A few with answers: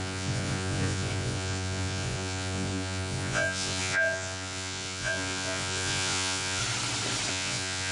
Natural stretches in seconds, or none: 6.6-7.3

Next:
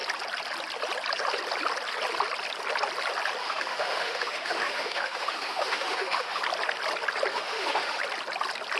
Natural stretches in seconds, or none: 0.0-3.4; 6.4-7.3; 8.0-8.8

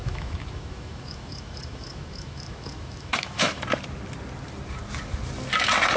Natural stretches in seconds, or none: 3.6-6.0

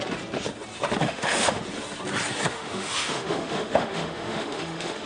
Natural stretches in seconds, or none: 0.0-1.0; 1.6-2.5

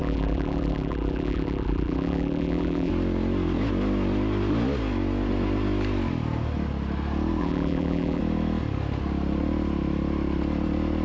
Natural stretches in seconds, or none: 2.9-7.4; 8.2-11.0

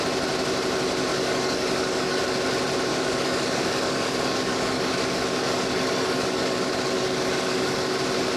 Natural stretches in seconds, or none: 0.0-1.1; 2.2-2.9; 7.9-8.4